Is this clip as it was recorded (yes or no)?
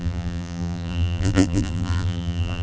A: no